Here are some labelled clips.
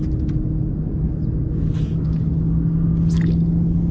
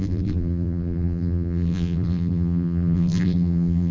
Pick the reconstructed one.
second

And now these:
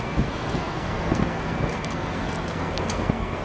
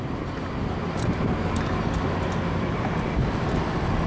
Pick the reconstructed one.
first